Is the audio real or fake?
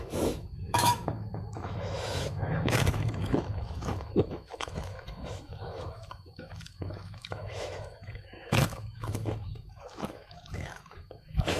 fake